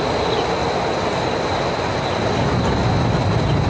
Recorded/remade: recorded